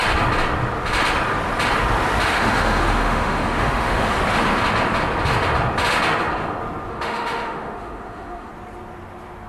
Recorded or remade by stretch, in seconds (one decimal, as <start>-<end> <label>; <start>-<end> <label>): 0.0-2.3 recorded; 2.3-4.2 remade; 4.2-6.9 recorded; 6.9-8.5 remade; 8.5-9.5 recorded